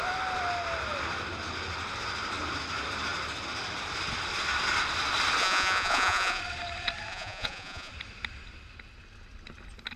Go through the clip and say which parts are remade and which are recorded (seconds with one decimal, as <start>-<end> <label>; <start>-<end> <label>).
0.0-5.4 recorded; 5.4-6.4 remade; 6.4-7.1 recorded; 7.1-7.9 remade; 7.9-10.0 recorded